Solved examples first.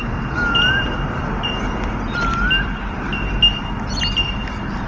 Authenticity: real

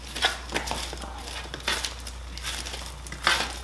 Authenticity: real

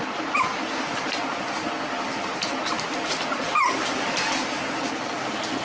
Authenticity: real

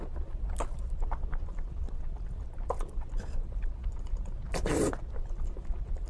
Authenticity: real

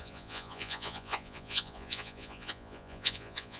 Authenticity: fake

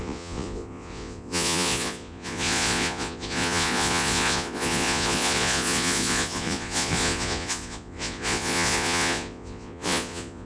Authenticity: fake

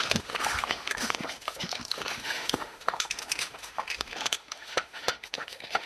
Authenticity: fake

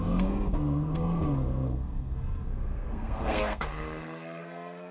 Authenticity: fake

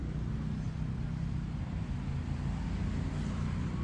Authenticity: real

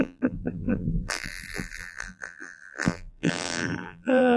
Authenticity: fake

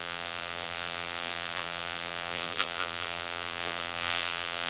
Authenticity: fake